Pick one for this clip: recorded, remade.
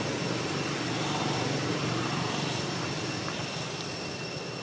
recorded